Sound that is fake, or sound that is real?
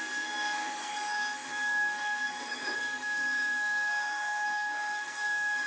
fake